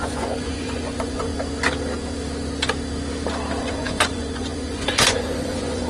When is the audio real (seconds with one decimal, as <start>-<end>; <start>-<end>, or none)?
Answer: 1.3-3.6